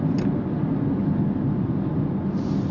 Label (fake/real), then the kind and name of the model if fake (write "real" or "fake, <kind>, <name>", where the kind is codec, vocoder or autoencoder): real